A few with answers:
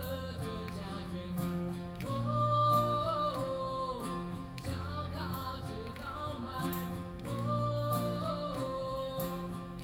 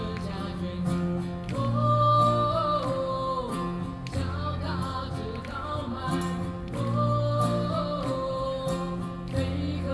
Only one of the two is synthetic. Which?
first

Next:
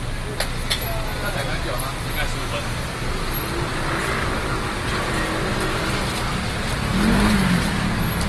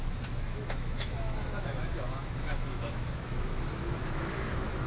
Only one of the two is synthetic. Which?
second